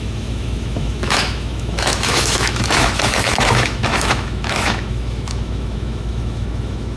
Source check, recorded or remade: remade